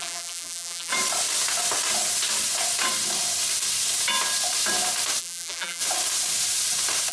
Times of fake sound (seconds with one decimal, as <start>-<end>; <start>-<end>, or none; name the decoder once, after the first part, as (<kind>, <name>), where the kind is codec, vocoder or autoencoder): 0.0-0.9 (vocoder, BigVGAN v2); 5.2-5.8